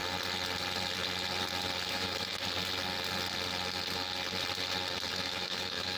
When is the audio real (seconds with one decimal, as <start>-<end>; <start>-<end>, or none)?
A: 0.0-1.9; 2.3-5.1